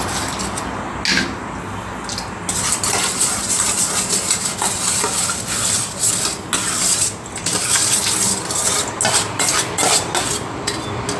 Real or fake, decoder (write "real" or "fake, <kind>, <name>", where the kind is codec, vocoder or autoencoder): real